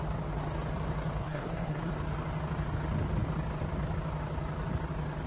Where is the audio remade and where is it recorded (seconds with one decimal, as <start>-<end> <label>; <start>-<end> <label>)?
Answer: 0.0-1.2 recorded; 1.2-1.9 remade; 1.9-5.3 recorded